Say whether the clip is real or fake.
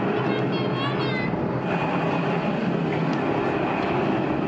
real